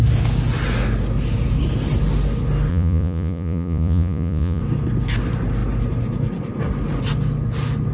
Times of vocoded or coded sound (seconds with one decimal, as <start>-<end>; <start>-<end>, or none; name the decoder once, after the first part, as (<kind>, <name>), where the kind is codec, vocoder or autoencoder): 2.7-4.6 (vocoder, Vocos)